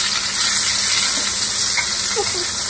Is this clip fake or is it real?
real